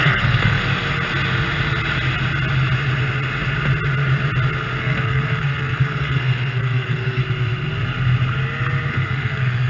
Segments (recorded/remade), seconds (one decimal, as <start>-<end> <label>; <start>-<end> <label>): 0.0-0.6 remade; 0.6-4.8 recorded; 4.8-7.2 remade; 7.2-8.9 recorded; 8.9-9.7 remade

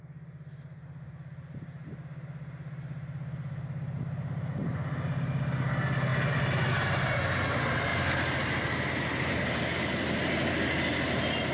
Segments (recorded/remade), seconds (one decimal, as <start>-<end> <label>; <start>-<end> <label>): 0.0-11.5 recorded

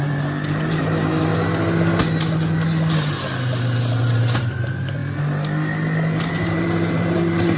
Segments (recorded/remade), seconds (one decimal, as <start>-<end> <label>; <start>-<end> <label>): 0.0-1.3 remade; 1.3-4.0 recorded; 4.0-5.0 remade; 5.0-6.3 recorded; 6.3-7.6 remade

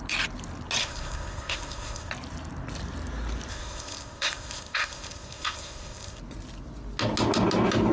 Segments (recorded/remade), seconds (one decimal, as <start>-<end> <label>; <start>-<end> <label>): 0.0-0.8 recorded; 0.8-2.1 remade; 2.1-3.5 recorded; 3.5-6.2 remade; 6.2-7.9 recorded